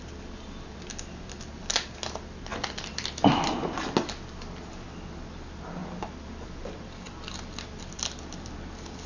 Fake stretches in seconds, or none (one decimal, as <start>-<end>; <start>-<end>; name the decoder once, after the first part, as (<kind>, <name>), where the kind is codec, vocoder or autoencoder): 2.5-3.1 (vocoder, BigVGAN v2); 5.8-6.7